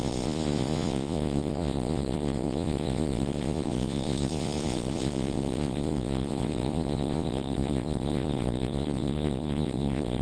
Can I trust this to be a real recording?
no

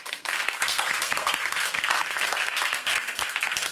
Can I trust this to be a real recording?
no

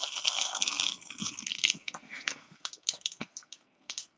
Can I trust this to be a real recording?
no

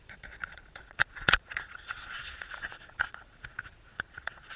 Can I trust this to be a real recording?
no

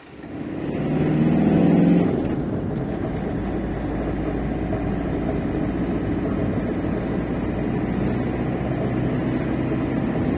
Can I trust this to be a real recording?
yes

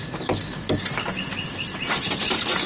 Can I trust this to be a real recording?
yes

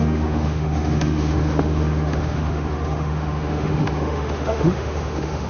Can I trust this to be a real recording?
no